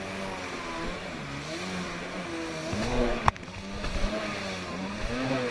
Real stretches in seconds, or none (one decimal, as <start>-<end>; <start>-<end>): 0.0-2.9; 3.4-5.5